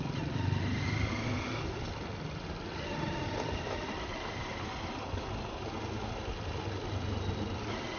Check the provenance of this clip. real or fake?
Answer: real